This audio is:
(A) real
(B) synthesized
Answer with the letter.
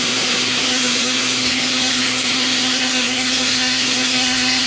B